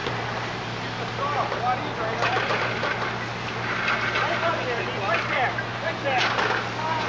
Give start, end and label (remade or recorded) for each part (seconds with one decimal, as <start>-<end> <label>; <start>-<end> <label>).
0.0-7.1 recorded